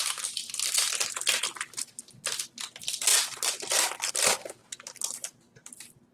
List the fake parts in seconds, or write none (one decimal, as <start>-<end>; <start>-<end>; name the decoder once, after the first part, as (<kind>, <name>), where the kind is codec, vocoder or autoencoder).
4.6-6.1 (vocoder, BigVGAN v2)